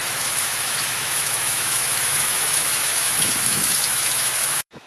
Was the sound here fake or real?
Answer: fake